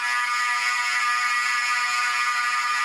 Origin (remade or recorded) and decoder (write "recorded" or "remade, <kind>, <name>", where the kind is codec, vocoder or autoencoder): recorded